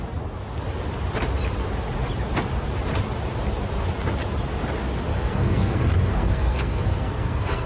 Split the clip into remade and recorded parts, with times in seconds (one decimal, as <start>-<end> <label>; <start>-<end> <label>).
0.0-5.1 recorded; 5.1-7.7 remade